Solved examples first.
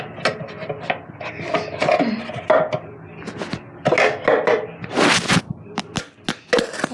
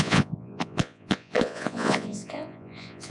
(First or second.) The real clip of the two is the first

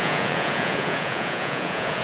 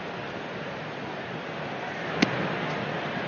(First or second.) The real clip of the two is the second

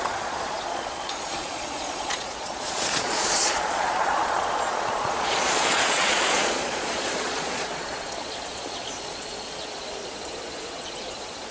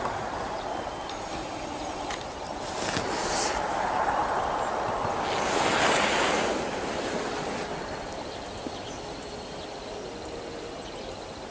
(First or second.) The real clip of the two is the second